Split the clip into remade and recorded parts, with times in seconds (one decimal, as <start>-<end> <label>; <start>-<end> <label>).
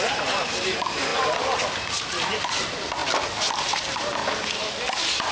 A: 0.0-1.1 remade; 1.1-2.6 recorded; 2.6-3.0 remade; 3.0-3.5 recorded; 3.5-4.2 remade; 4.2-5.3 recorded